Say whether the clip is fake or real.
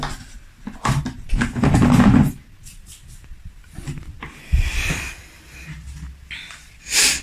real